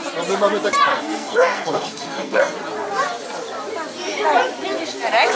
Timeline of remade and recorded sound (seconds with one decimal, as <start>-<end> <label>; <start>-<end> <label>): 0.0-0.9 recorded; 0.9-2.4 remade; 2.4-5.4 recorded